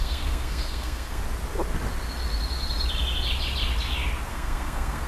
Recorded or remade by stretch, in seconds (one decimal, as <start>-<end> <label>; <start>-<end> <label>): 0.0-1.2 remade; 1.2-4.3 recorded; 4.3-5.1 remade